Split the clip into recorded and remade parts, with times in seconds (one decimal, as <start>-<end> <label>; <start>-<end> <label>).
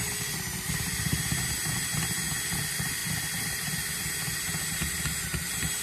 0.0-5.8 recorded